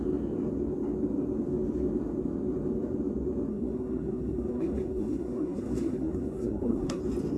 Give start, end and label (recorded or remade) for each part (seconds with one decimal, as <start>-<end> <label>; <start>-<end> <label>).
0.0-3.5 recorded; 3.5-7.0 remade; 7.0-7.4 recorded